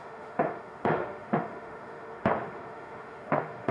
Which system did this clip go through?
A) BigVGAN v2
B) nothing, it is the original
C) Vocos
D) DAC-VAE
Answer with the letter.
D